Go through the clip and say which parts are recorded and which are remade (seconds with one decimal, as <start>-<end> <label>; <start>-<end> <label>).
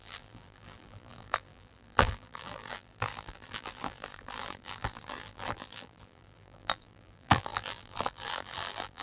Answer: 0.0-9.0 remade